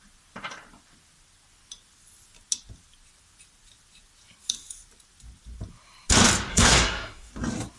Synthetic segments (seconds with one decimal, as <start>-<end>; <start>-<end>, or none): 6.5-7.3